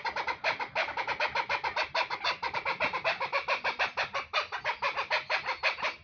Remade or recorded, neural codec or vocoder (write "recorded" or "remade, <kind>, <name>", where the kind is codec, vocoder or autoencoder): remade, vocoder, BigVGAN v2